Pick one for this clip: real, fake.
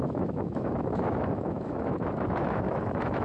fake